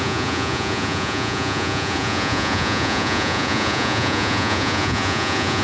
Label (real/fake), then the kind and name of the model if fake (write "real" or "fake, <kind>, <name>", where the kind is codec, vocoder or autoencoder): fake, vocoder, Vocos